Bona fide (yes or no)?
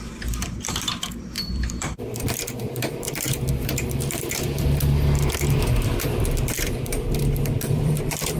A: no